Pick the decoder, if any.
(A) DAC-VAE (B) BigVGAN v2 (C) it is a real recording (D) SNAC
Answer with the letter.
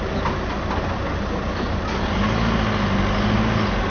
C